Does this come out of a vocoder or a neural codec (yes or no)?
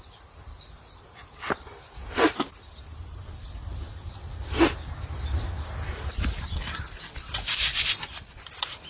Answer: no